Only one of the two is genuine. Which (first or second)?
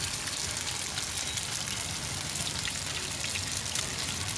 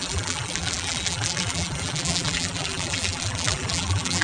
first